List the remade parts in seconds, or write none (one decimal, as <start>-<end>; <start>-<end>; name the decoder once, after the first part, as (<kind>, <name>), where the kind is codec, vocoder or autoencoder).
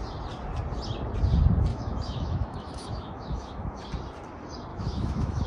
1.7-3.8 (autoencoder, DAC-VAE); 4.7-5.5